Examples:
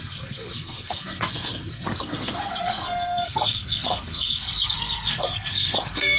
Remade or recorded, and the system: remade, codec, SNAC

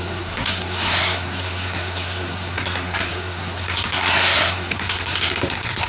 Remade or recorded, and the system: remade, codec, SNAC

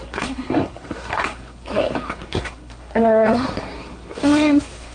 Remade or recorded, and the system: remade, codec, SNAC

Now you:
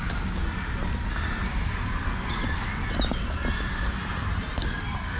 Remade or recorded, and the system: recorded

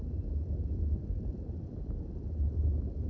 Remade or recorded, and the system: recorded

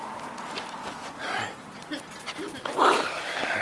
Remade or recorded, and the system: recorded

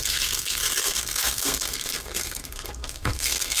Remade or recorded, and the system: remade, codec, SNAC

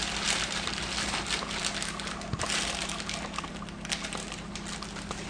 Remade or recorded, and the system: recorded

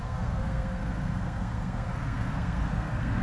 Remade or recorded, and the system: remade, codec, SNAC